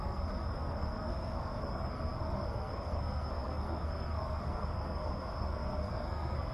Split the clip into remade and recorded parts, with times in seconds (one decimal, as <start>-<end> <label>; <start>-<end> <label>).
0.0-6.5 remade